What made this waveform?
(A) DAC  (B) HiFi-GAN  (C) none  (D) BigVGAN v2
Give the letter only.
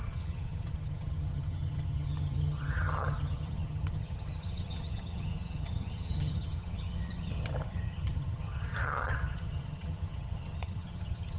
B